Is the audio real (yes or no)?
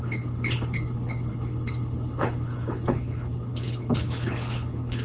no